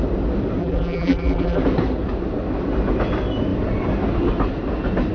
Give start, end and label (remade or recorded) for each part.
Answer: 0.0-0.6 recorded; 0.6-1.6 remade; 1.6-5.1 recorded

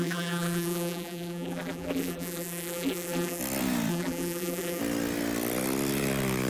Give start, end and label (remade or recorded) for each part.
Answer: 0.0-3.4 remade; 3.4-3.9 recorded; 3.9-4.8 remade; 4.8-6.5 recorded

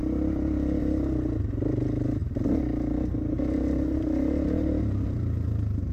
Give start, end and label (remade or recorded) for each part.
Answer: 0.0-5.9 recorded

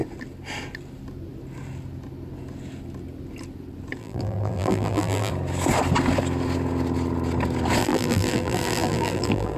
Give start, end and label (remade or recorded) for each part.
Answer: 0.0-4.0 recorded; 4.0-5.3 remade; 5.3-7.8 recorded; 7.8-9.6 remade

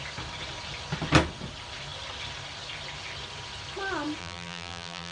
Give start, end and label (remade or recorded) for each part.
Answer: 0.0-4.2 recorded; 4.2-5.1 remade

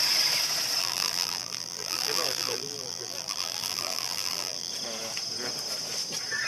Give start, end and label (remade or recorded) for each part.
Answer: 0.0-0.8 recorded; 0.8-4.7 remade; 4.7-6.5 recorded